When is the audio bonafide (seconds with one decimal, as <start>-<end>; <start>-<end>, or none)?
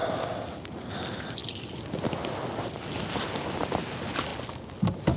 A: 0.0-5.2